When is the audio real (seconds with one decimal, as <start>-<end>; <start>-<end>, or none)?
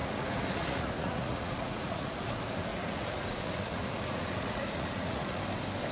2.3-2.7; 5.4-5.9